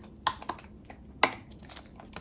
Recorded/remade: recorded